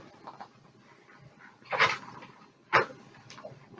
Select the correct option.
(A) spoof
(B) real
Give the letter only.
B